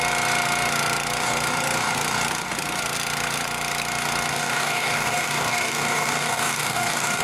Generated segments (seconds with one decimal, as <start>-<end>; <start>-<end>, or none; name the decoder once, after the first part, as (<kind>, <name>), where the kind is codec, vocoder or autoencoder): 4.3-7.2 (codec, DAC)